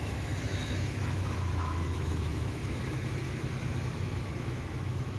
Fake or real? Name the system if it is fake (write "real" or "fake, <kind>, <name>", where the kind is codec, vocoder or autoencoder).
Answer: fake, autoencoder, DAC-VAE